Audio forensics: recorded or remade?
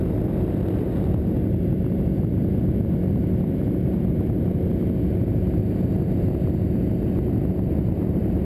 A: recorded